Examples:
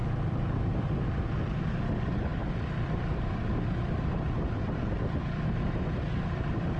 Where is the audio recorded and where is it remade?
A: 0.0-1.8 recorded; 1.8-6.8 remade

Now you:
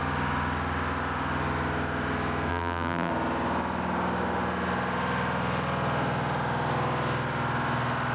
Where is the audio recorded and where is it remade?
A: 0.0-2.5 recorded; 2.5-3.1 remade; 3.1-8.1 recorded

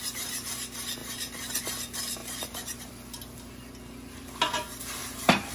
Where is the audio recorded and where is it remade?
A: 0.0-2.2 recorded; 2.2-2.9 remade; 2.9-5.0 recorded; 5.0-5.5 remade

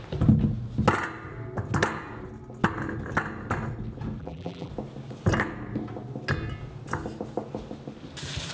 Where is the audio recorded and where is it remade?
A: 0.0-4.2 recorded; 4.2-4.7 remade; 4.7-8.5 recorded

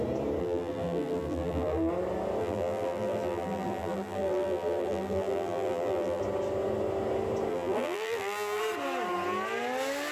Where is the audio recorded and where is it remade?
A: 0.0-0.4 recorded; 0.4-1.9 remade; 1.9-2.4 recorded; 2.4-6.2 remade; 6.2-7.5 recorded; 7.5-8.6 remade; 8.6-10.1 recorded

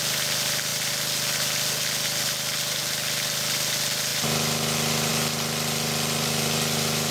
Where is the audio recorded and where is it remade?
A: 0.0-7.1 recorded

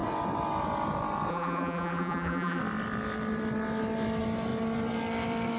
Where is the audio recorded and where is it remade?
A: 0.0-1.3 recorded; 1.3-2.6 remade; 2.6-5.6 recorded